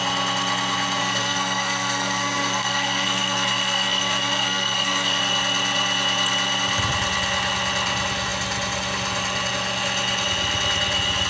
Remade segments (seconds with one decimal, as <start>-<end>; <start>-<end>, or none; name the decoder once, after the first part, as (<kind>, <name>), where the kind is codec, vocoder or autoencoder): 1.0-5.2 (codec, SNAC)